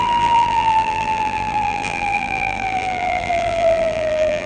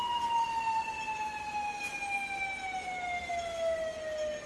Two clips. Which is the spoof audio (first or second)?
first